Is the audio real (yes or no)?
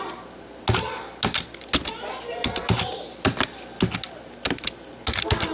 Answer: yes